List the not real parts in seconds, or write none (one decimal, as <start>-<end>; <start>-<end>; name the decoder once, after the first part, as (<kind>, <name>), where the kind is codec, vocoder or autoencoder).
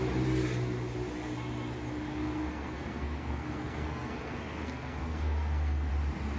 2.1-5.9 (codec, SNAC)